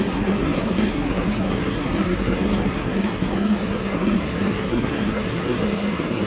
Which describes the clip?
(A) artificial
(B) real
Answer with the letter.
A